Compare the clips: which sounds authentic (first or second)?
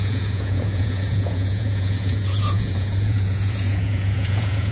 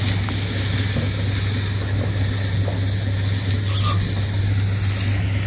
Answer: second